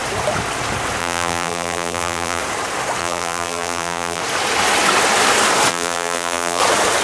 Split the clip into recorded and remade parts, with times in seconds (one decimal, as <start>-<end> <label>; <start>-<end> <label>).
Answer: 0.0-1.0 recorded; 1.0-2.4 remade; 2.4-3.0 recorded; 3.0-4.2 remade; 4.2-5.7 recorded; 5.7-6.6 remade; 6.6-7.0 recorded